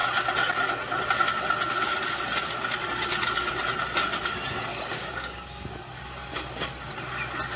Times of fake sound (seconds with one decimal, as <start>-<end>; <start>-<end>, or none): 4.7-5.7